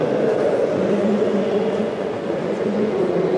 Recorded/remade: remade